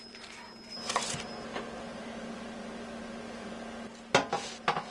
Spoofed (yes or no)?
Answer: no